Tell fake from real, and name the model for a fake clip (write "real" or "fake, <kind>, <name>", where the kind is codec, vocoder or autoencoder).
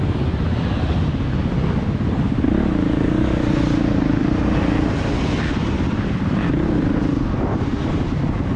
real